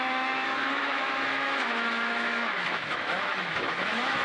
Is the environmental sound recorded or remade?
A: remade